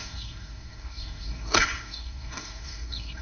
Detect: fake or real fake